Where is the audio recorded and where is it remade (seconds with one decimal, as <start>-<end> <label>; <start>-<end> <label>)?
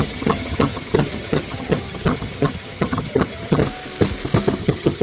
0.0-3.6 remade; 3.6-4.6 recorded; 4.6-5.0 remade